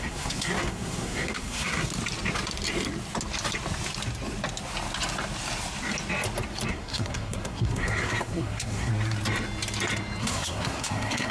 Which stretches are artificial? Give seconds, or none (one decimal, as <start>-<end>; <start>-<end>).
0.0-1.9; 6.7-8.9; 10.2-11.3